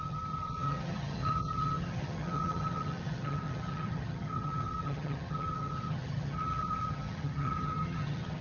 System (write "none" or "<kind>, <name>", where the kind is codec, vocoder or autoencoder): vocoder, HiFi-GAN